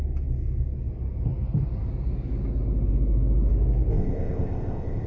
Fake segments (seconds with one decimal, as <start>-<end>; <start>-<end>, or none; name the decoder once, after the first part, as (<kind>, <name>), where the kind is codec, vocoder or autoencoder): 3.9-5.1 (codec, ZipCodec)